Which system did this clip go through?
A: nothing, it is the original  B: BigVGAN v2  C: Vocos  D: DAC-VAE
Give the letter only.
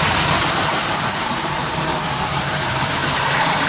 B